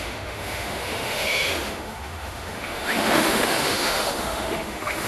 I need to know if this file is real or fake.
fake